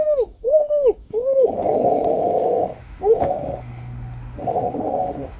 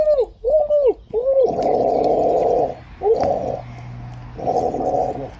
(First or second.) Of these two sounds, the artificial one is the first